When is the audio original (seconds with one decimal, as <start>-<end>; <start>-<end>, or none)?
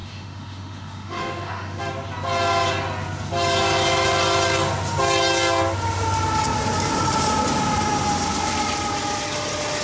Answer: 1.8-9.8